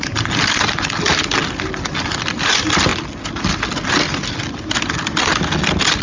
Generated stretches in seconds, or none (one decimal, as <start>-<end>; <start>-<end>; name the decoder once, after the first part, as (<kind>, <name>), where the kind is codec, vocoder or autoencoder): none